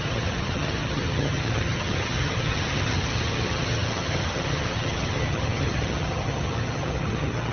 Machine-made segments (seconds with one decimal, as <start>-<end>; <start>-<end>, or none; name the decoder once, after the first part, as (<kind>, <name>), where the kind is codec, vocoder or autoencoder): 0.0-7.5 (vocoder, HiFi-GAN)